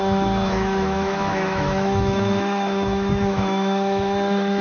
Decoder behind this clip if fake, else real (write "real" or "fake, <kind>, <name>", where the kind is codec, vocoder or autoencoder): fake, autoencoder, DAC-VAE